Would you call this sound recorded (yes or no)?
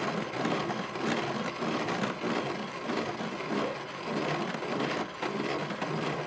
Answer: yes